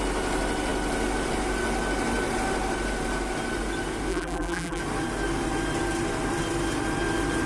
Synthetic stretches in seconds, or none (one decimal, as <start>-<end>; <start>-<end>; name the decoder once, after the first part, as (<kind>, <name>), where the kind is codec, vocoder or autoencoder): 4.1-4.8 (vocoder, BigVGAN v2)